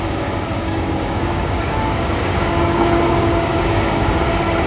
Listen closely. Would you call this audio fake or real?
fake